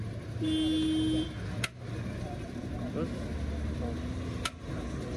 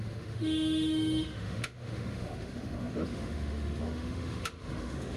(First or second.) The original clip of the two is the first